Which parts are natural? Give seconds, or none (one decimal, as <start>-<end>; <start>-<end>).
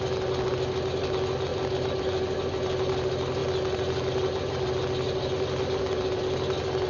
0.0-6.9